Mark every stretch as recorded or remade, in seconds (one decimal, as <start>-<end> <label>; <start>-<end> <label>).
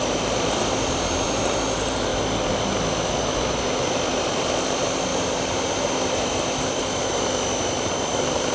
0.0-8.5 recorded